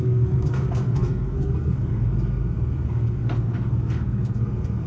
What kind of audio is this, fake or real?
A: fake